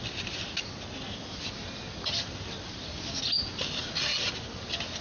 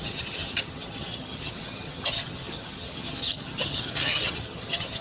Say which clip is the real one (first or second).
first